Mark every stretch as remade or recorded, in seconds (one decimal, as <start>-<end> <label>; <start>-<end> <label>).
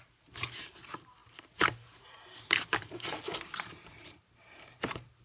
0.0-5.2 remade